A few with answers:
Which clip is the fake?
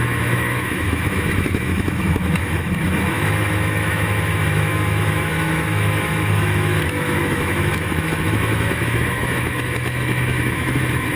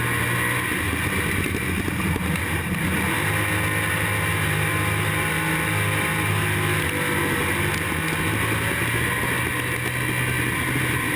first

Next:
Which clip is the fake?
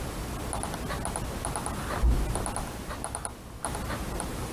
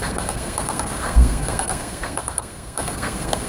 second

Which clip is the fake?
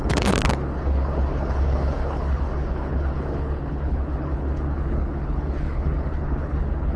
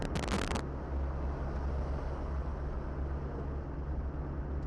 first